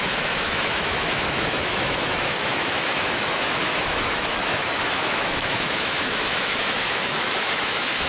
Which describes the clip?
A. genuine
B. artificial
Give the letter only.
B